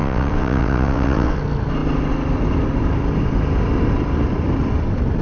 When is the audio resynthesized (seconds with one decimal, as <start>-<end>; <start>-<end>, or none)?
0.0-1.4